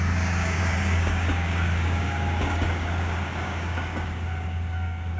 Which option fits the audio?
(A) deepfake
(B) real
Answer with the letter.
A